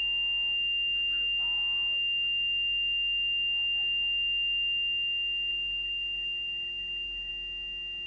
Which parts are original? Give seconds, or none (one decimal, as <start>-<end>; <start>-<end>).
0.0-5.5; 7.3-8.1